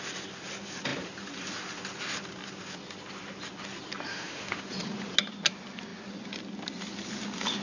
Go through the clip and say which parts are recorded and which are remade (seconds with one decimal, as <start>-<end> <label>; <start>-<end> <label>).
0.0-4.1 recorded; 4.1-4.7 remade; 4.7-7.6 recorded